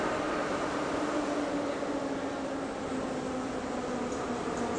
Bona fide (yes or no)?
yes